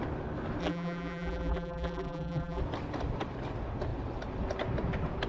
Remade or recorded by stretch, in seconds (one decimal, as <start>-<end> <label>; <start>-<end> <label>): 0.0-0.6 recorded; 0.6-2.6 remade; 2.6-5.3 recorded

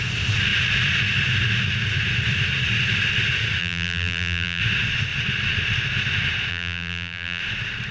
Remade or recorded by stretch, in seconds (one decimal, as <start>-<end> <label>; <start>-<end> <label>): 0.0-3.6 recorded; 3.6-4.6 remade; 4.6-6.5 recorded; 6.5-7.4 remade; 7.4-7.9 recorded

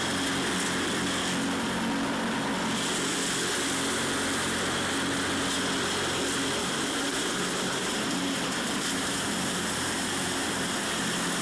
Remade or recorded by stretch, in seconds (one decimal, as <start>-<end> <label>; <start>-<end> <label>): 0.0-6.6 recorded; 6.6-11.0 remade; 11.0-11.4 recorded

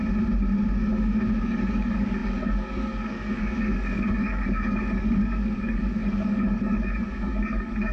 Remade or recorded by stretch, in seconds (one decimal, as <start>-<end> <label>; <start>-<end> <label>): 0.0-1.4 recorded; 1.4-7.9 remade

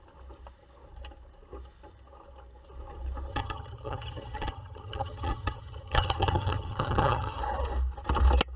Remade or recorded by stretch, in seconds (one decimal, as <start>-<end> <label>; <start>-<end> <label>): 0.0-3.3 recorded; 3.3-7.4 remade; 7.4-8.6 recorded

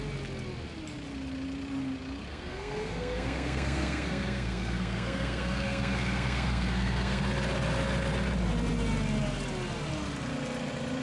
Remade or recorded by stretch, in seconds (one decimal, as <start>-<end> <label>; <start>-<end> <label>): 0.0-2.3 recorded; 2.3-7.2 remade; 7.2-11.0 recorded

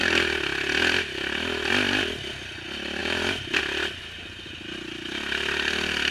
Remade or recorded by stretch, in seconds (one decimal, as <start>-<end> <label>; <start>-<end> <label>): 0.0-3.0 recorded; 3.0-3.6 remade; 3.6-6.1 recorded

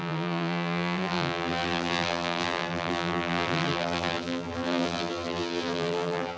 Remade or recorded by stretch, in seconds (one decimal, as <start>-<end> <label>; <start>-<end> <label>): 0.0-6.4 remade